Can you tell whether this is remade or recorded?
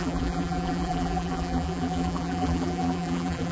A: remade